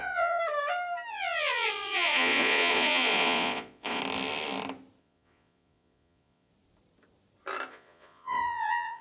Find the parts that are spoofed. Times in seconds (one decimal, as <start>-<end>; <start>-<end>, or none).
0.0-0.4; 1.1-4.0; 5.0-6.5; 7.7-9.0